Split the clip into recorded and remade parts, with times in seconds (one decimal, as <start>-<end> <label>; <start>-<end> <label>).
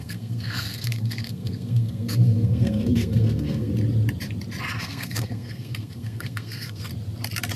0.0-3.7 remade; 3.7-4.8 recorded; 4.8-6.9 remade; 6.9-7.6 recorded